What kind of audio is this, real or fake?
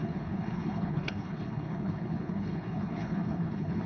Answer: fake